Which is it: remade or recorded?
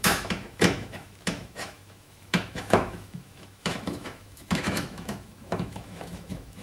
remade